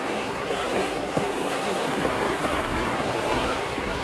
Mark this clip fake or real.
fake